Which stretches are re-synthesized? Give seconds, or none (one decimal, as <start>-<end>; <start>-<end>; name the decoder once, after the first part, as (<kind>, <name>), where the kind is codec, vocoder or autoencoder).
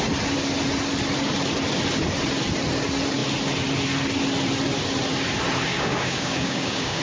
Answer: 5.7-7.0 (codec, DAC)